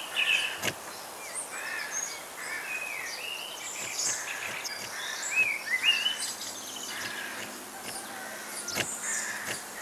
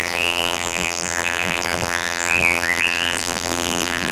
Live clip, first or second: first